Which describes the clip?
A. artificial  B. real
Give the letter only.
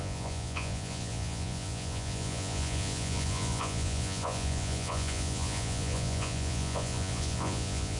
A